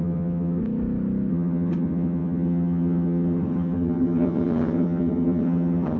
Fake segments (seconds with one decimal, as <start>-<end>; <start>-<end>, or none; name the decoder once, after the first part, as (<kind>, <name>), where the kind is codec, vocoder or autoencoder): 0.0-0.6 (vocoder, HiFi-GAN); 1.3-6.0